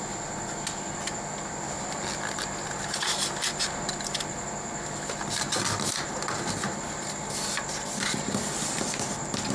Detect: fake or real real